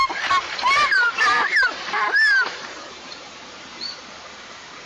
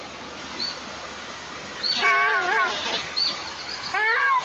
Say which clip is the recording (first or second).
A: second